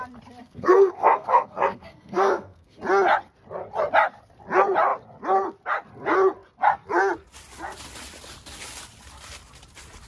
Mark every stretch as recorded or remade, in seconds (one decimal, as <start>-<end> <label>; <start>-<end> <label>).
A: 0.0-0.4 recorded; 0.4-2.8 remade; 2.8-10.1 recorded